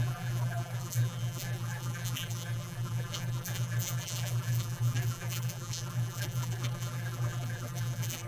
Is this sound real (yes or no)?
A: no